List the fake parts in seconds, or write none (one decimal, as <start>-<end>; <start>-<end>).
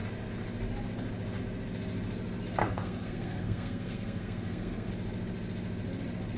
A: 2.6-4.9